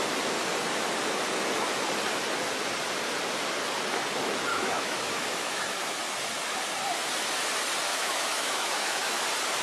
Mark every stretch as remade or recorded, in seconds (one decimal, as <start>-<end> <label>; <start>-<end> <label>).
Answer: 0.0-4.5 recorded; 4.5-5.6 remade; 5.6-7.9 recorded; 7.9-9.2 remade; 9.2-9.6 recorded